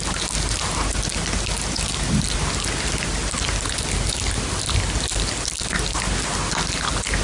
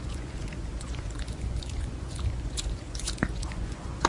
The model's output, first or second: second